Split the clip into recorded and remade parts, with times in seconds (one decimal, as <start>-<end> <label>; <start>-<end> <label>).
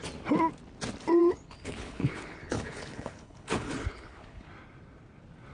0.0-1.2 recorded; 1.2-4.5 remade; 4.5-5.5 recorded